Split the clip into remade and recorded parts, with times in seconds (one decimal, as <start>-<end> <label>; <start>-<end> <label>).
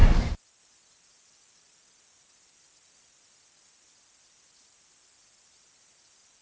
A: 0.0-6.4 recorded